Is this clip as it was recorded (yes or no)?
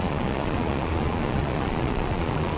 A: no